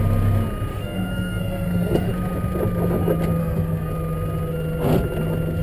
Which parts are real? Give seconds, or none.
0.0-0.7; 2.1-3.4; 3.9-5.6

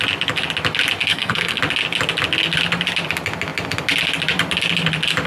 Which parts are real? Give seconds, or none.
0.0-1.1; 1.6-5.3